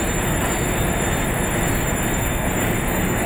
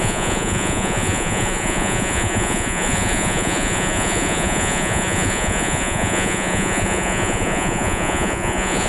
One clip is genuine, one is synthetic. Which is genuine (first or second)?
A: first